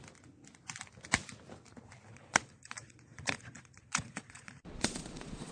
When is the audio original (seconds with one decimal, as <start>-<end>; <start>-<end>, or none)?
0.0-2.1